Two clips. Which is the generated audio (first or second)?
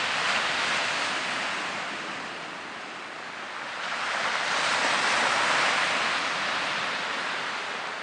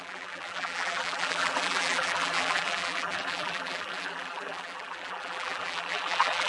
second